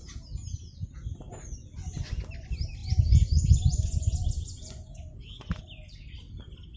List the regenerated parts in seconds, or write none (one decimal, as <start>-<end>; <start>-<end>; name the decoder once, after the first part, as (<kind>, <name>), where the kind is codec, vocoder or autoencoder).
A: 2.8-5.6 (vocoder, Vocos)